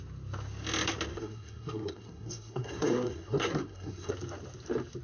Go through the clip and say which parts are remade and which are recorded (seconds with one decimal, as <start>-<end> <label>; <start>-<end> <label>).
0.0-1.1 recorded; 1.1-4.1 remade; 4.1-5.0 recorded